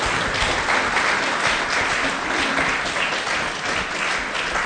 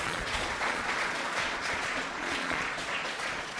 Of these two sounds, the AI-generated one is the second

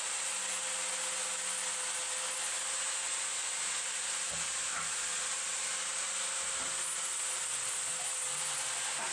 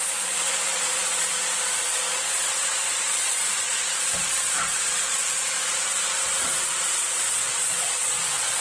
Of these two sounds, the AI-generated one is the second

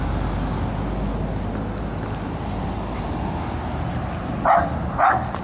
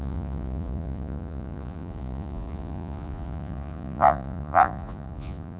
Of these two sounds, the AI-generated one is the second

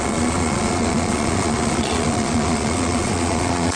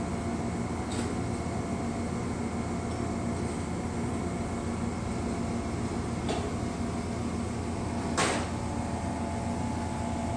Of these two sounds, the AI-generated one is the first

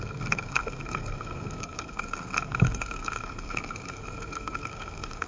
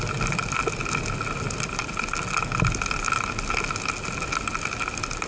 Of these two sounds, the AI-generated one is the first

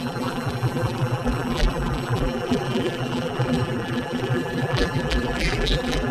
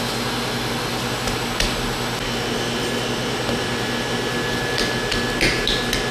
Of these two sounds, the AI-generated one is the first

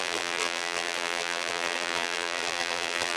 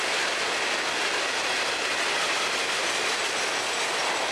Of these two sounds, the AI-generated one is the first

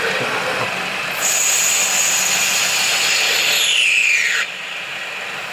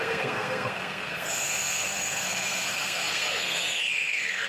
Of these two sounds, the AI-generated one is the second